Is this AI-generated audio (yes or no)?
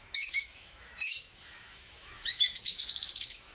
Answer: yes